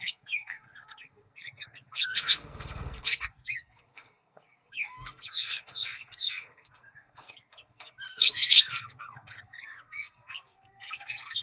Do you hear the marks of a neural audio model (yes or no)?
yes